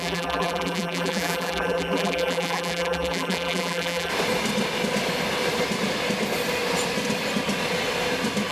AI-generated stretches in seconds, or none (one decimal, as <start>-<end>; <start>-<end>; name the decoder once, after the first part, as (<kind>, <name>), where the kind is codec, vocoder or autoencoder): 0.0-4.1 (vocoder, BigVGAN v2)